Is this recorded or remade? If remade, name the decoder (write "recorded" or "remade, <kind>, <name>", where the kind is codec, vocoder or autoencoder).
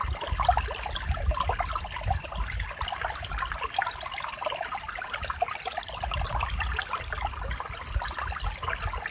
recorded